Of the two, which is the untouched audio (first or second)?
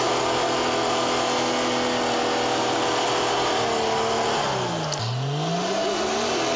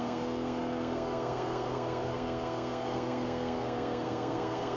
first